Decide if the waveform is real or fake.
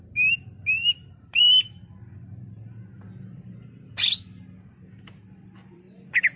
real